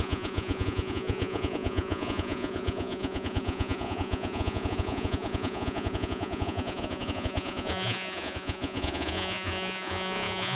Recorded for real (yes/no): no